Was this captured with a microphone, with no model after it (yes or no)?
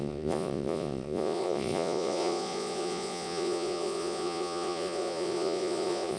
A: no